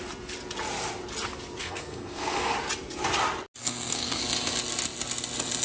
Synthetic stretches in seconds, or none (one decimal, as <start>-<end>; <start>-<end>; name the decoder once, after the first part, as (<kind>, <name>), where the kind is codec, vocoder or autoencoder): 1.6-2.5 (codec, SNAC); 3.6-4.2